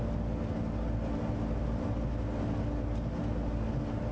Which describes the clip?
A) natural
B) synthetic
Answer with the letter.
A